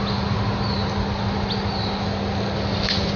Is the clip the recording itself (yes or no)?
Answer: yes